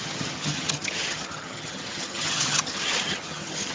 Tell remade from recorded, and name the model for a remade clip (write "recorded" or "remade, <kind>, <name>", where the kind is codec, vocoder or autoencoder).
remade, vocoder, HiFi-GAN